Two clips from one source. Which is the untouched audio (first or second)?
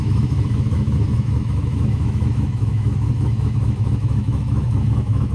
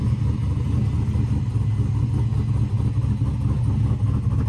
second